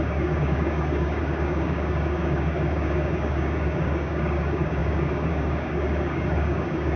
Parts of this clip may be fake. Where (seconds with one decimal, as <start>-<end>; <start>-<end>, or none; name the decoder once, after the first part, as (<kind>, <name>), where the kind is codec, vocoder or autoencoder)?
0.0-7.0 (codec, DAC)